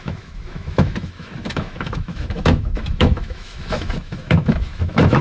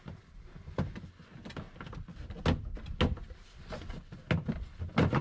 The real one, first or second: second